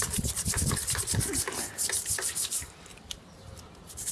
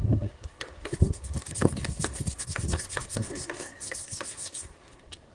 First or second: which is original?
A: first